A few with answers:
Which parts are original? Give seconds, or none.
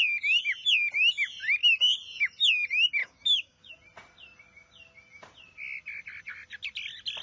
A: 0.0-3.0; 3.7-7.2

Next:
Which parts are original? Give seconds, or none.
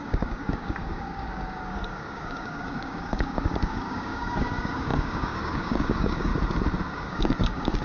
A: 6.3-6.9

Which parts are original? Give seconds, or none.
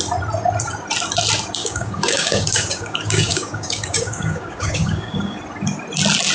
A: 0.0-1.6; 5.4-6.3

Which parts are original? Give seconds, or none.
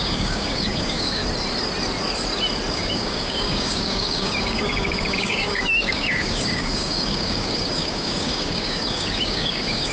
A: 1.2-2.7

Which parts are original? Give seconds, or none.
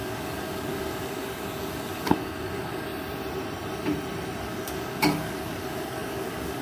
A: 2.9-4.4